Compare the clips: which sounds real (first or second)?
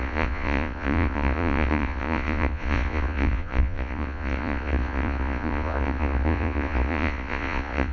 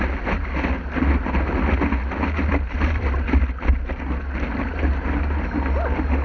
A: second